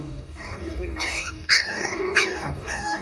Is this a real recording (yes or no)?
no